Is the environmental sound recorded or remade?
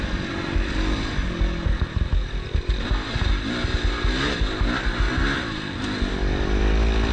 recorded